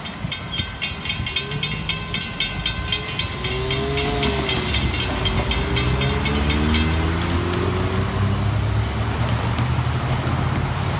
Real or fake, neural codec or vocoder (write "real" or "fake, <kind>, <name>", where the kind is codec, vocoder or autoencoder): real